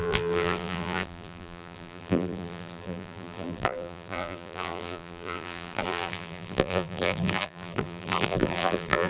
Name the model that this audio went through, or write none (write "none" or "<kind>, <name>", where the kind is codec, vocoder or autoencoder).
vocoder, BigVGAN v2